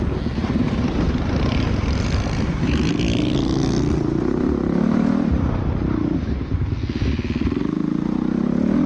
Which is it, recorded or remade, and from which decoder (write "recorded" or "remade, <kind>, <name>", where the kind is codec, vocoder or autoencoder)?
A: recorded